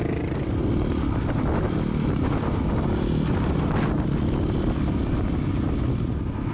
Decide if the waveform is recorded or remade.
recorded